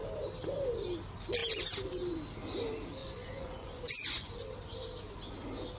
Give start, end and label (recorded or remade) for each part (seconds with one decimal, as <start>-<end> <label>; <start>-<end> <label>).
0.0-3.0 recorded; 3.0-4.3 remade; 4.3-5.8 recorded